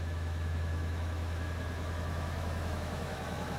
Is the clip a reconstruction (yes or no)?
yes